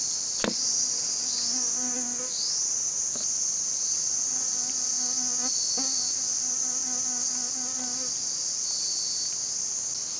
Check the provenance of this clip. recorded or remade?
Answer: recorded